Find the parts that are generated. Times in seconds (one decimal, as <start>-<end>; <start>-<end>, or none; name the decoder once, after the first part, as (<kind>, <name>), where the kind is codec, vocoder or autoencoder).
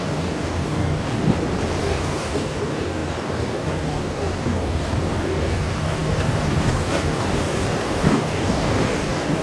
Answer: 0.0-1.2 (codec, DAC); 1.8-9.4